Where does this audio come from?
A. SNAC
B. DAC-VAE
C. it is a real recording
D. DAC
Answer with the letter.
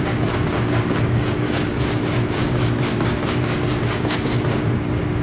D